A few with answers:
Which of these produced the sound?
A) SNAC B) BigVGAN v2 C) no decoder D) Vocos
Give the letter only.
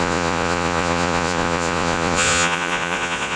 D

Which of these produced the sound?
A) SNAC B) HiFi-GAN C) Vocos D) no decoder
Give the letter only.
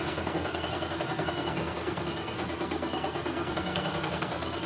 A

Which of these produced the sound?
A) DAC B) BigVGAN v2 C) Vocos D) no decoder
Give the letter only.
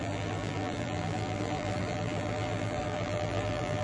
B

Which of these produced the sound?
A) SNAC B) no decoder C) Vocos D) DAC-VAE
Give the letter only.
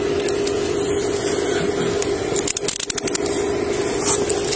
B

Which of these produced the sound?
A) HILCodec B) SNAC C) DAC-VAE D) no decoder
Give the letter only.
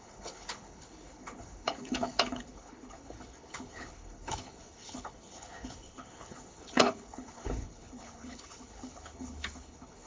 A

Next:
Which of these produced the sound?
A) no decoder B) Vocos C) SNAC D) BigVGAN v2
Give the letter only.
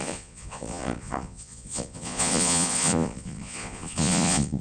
B